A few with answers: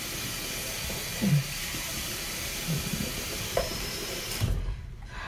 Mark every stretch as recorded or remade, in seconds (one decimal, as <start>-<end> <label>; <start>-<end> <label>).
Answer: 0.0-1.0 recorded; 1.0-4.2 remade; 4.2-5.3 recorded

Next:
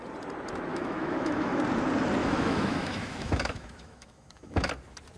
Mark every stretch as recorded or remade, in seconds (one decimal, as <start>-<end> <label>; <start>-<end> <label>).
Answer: 0.0-0.7 recorded; 0.7-1.6 remade; 1.6-2.2 recorded; 2.2-4.7 remade; 4.7-5.2 recorded

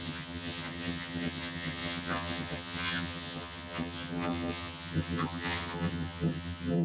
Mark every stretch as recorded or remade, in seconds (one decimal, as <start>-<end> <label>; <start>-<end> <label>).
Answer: 0.0-6.8 remade

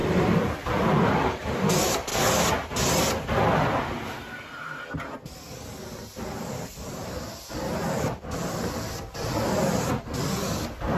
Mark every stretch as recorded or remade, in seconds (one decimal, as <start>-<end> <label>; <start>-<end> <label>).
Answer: 0.0-2.1 remade; 2.1-6.2 recorded; 6.2-11.0 remade

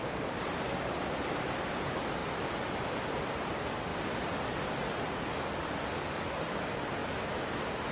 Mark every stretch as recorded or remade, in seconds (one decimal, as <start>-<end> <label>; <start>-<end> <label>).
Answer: 0.0-2.2 recorded; 2.2-2.8 remade; 2.8-3.9 recorded; 3.9-4.7 remade; 4.7-7.9 recorded

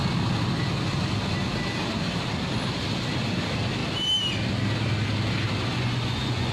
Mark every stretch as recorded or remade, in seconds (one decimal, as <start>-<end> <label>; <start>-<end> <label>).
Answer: 0.0-5.7 recorded; 5.7-6.5 remade

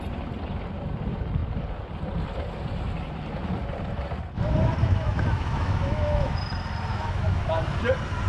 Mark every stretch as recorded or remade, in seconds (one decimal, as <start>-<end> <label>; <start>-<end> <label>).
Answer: 0.0-4.8 recorded; 4.8-6.4 remade; 6.4-6.9 recorded; 6.9-7.5 remade; 7.5-8.3 recorded

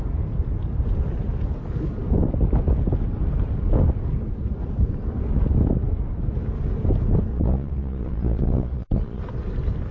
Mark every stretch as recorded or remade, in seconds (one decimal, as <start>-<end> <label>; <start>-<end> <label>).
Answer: 0.0-7.3 recorded; 7.3-9.2 remade; 9.2-9.9 recorded